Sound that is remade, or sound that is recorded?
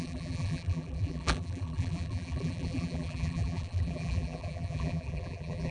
remade